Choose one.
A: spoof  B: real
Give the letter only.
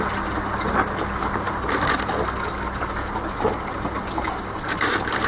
B